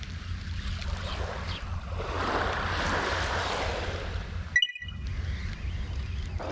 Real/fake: real